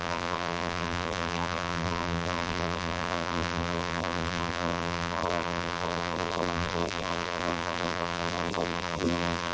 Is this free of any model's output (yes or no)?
no